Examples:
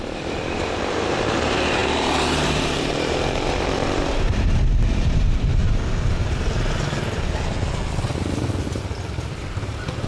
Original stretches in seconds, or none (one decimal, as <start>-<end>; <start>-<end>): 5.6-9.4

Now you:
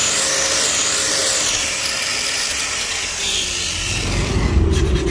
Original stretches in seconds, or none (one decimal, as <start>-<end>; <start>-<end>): 0.0-2.1; 4.5-5.1

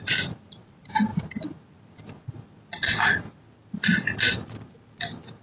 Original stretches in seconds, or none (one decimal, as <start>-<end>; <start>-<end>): 1.1-4.3